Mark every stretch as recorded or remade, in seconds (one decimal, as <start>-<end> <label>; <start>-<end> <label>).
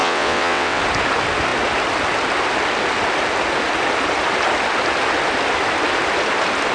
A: 0.0-0.8 remade; 0.8-6.7 recorded